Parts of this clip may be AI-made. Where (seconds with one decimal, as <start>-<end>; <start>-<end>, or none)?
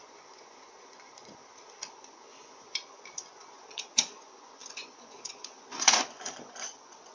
0.0-1.4; 1.9-7.1